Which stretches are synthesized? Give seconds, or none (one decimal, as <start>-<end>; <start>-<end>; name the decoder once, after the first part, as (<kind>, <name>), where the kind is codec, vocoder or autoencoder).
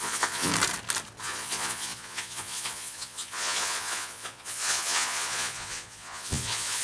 0.0-0.5 (vocoder, Vocos); 1.2-6.8